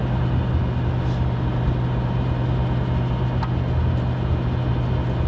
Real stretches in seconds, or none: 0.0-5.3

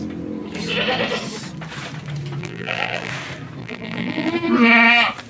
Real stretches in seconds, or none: 0.0-2.4; 3.1-3.6; 4.3-5.3

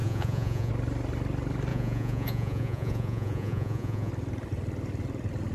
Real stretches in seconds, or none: 0.7-1.7; 4.1-5.5

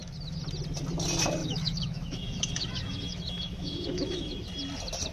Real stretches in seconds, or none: 0.0-1.4; 4.5-5.1